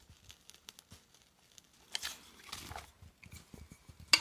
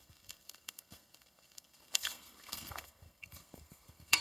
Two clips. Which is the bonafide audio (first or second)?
first